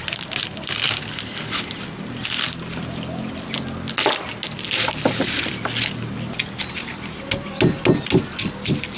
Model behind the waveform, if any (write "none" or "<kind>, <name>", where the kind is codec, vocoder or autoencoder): none